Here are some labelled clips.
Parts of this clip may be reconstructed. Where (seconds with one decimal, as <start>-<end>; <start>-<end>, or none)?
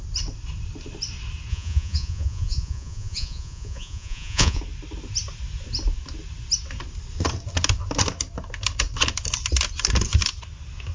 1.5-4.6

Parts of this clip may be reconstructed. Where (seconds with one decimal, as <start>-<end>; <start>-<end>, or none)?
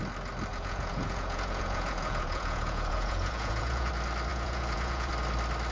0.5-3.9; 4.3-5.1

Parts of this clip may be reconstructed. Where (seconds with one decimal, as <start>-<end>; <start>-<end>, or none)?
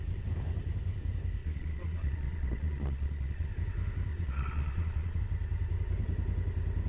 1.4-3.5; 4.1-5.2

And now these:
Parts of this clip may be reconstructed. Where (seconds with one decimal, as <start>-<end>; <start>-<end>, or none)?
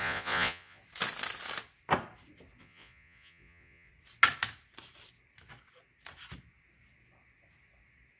0.0-0.8; 2.6-3.9